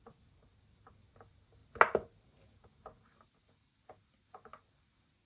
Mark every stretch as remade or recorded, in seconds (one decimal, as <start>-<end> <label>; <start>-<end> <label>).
0.0-5.3 recorded